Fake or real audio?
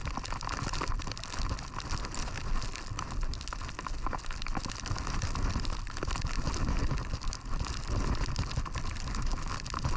real